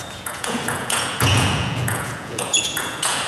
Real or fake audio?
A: fake